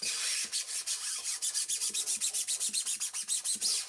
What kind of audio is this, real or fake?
real